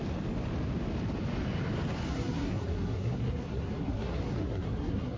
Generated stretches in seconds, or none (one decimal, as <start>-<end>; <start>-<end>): 2.1-5.2